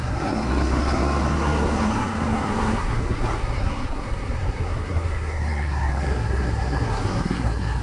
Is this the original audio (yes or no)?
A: no